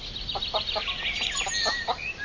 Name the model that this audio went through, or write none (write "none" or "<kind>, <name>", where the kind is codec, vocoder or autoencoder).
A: none